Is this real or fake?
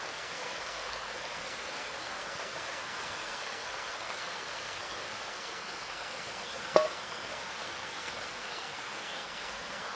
fake